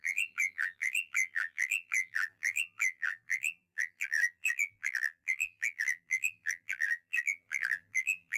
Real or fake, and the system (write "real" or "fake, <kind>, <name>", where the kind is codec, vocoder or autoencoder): fake, vocoder, BigVGAN v2